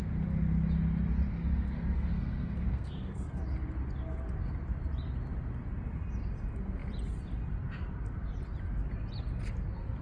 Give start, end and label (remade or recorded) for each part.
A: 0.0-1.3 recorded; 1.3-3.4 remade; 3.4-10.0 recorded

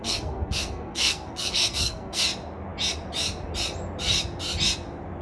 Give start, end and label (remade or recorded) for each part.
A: 0.0-2.2 remade; 2.2-5.2 recorded

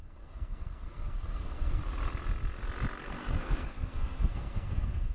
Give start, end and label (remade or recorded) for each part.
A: 0.0-1.8 remade; 1.8-3.0 recorded; 3.0-5.1 remade

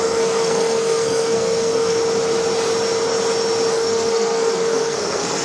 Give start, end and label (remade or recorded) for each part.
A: 0.0-2.0 remade; 2.0-3.7 recorded; 3.7-5.4 remade